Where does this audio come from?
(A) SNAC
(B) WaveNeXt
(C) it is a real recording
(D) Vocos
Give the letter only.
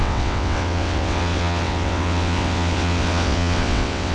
B